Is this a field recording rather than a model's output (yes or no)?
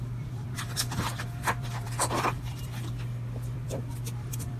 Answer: no